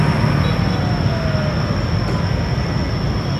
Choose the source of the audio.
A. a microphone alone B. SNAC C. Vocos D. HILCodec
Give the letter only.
A